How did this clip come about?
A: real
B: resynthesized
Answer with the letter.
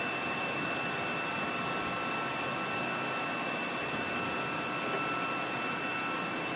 A